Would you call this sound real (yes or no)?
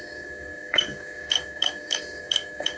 no